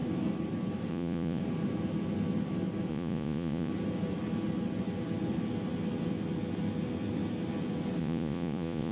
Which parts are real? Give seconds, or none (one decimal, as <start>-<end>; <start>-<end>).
0.0-0.9; 1.4-2.9; 3.7-8.0